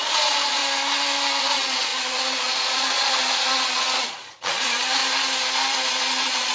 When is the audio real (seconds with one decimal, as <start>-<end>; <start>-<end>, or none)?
0.6-1.4; 5.0-6.0